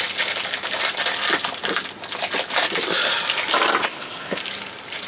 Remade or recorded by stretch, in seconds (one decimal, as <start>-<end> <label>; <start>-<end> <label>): 0.0-3.8 recorded; 3.8-4.4 remade; 4.4-5.1 recorded